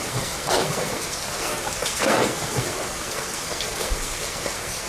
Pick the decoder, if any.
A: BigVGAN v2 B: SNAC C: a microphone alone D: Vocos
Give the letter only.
B